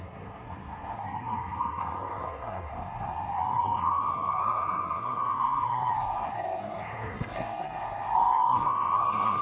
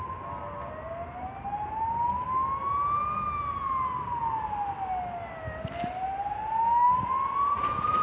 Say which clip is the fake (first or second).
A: first